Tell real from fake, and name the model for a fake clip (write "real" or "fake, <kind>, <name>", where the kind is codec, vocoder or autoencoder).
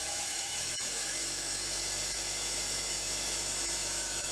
fake, autoencoder, DAC-VAE